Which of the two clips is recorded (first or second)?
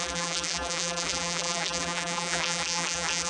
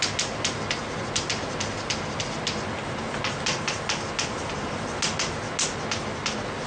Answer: second